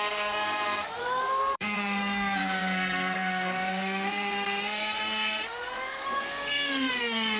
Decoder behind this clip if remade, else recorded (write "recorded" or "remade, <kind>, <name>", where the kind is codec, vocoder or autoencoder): remade, codec, SNAC